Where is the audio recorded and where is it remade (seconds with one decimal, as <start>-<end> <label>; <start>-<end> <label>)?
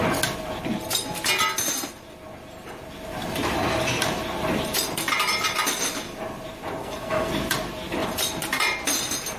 0.0-6.8 recorded; 6.8-7.3 remade; 7.3-9.4 recorded